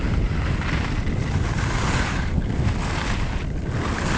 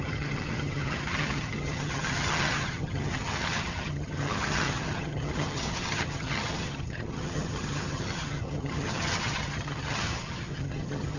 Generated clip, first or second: second